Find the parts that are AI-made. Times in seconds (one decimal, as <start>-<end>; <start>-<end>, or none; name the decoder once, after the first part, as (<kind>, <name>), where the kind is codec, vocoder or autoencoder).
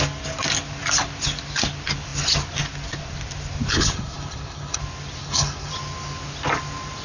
3.7-4.8 (codec, HILCodec); 5.2-5.7